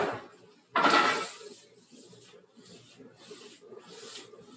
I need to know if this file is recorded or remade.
recorded